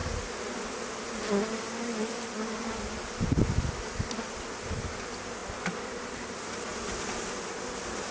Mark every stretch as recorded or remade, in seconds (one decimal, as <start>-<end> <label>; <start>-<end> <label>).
0.0-8.1 recorded